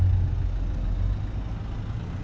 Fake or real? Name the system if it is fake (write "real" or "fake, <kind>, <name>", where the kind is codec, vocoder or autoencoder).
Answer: real